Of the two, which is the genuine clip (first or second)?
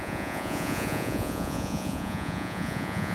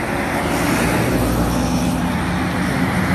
second